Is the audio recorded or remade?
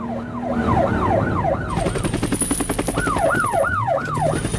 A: recorded